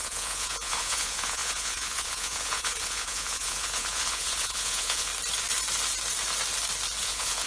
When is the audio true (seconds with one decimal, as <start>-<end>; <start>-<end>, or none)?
5.1-7.0